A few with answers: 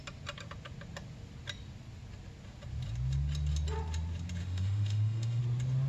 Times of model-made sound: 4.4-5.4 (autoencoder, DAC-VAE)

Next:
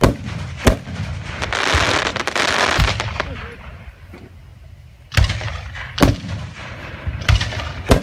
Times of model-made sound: none